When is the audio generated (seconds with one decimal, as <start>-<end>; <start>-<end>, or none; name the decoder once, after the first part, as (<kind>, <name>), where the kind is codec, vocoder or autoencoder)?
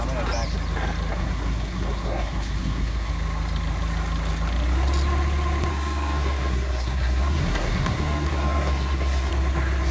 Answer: 1.1-3.1 (codec, SNAC); 5.7-9.3